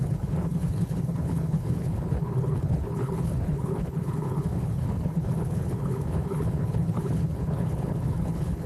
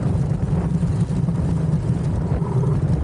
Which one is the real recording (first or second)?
second